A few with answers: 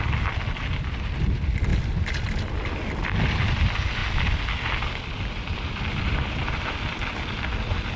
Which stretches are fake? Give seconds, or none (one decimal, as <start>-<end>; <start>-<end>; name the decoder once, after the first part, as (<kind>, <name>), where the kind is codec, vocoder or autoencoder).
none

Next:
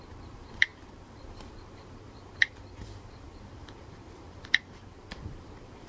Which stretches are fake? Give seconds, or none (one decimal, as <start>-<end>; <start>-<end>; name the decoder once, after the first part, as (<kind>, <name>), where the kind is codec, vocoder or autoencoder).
0.0-5.9 (vocoder, BigVGAN v2)

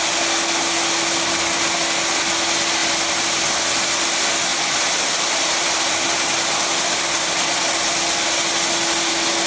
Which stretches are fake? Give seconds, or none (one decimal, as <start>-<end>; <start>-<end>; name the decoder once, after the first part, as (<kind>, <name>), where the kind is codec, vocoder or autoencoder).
2.8-3.4 (vocoder, BigVGAN v2); 4.5-7.0

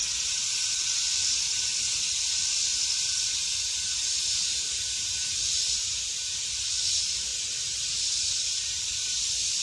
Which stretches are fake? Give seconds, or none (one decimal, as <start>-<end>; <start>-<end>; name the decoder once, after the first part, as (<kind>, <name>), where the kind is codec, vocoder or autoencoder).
7.3-8.0 (vocoder, BigVGAN v2)

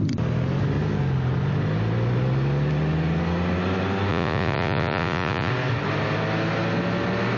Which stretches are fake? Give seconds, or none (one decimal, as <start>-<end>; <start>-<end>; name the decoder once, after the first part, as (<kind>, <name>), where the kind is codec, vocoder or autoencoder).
4.1-5.5 (vocoder, Vocos)

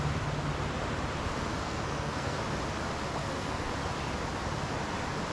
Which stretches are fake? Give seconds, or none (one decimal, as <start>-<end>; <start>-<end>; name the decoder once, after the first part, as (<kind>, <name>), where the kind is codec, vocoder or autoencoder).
1.6-2.4 (codec, SNAC); 3.2-3.7

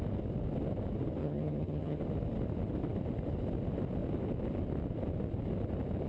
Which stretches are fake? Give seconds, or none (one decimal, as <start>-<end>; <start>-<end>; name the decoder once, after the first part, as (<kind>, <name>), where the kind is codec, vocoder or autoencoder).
1.2-2.0 (vocoder, HiFi-GAN)